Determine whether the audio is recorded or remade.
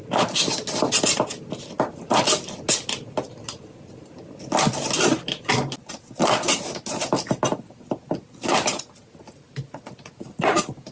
recorded